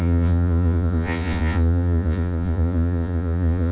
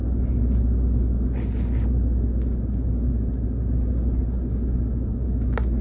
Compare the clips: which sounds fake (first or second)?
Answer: first